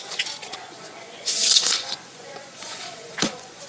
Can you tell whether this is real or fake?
fake